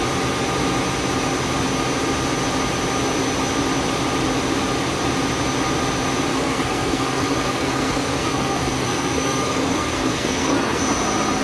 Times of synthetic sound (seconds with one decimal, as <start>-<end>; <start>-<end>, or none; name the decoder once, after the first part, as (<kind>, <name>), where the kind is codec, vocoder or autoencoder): 6.3-10.8 (codec, SNAC)